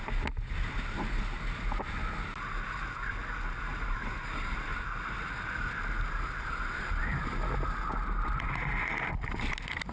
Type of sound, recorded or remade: recorded